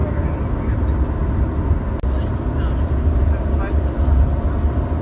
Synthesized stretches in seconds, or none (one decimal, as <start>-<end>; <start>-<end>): none